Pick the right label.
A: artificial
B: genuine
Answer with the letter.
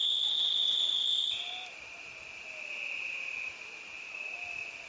B